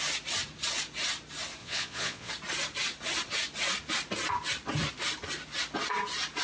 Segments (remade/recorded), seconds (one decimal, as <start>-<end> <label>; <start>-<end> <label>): 0.0-1.6 recorded; 1.6-2.3 remade; 2.3-6.4 recorded